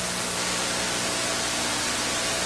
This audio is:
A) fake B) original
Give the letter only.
B